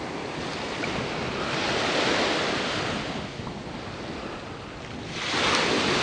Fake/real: real